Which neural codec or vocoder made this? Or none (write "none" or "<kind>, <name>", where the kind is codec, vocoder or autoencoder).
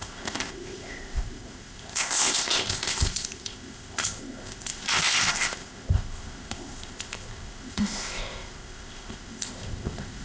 codec, ZipCodec